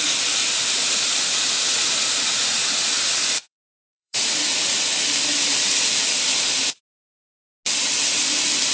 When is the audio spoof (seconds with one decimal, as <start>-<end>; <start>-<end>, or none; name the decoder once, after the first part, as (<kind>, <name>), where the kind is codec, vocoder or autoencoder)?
0.4-4.8 (vocoder, Vocos)